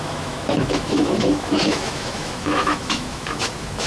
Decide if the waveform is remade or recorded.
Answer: remade